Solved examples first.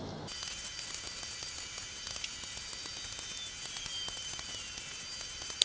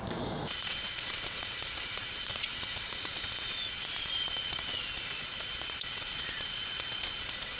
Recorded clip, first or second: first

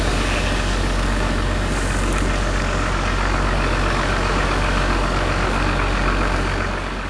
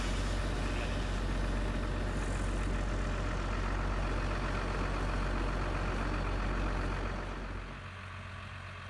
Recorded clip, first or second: second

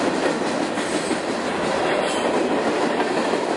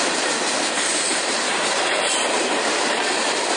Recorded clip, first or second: first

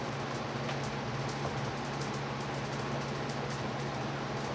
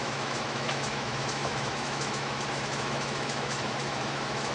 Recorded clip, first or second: first